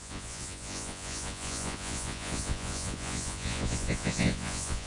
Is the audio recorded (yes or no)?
no